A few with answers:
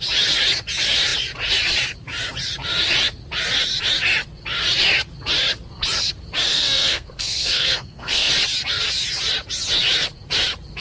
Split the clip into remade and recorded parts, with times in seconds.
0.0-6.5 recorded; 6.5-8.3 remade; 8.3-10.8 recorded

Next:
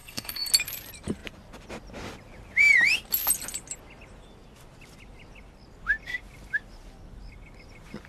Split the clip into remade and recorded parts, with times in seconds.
0.0-0.5 remade; 0.5-8.1 recorded

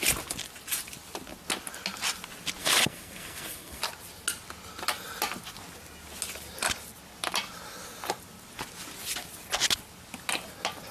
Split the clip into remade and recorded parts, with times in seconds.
0.0-2.6 recorded; 2.6-3.8 remade; 3.8-10.9 recorded

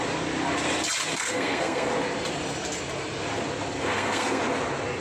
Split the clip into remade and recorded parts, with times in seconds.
0.0-1.1 recorded; 1.1-1.9 remade; 1.9-3.8 recorded; 3.8-4.4 remade; 4.4-5.0 recorded

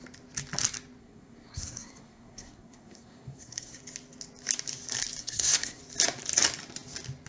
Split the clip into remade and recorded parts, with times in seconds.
0.0-1.0 recorded; 1.0-3.8 remade; 3.8-5.2 recorded; 5.2-5.8 remade; 5.8-7.3 recorded